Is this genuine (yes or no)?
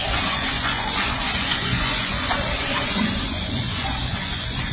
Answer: no